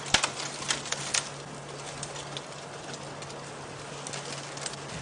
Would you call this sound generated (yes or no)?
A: no